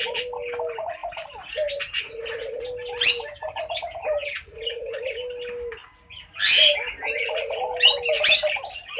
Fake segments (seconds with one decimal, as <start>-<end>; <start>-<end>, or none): none

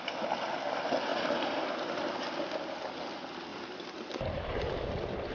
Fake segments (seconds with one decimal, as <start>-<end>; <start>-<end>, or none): none

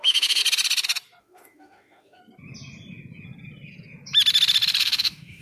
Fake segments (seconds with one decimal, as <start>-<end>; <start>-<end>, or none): 0.0-0.4; 1.2-2.2; 4.8-5.4